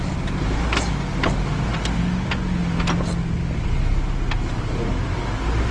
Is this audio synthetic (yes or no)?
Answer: no